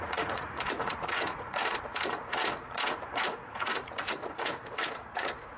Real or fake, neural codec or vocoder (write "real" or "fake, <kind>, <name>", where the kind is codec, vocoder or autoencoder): fake, vocoder, Vocos